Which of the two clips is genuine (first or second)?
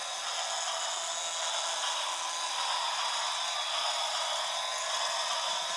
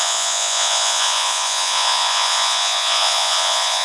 first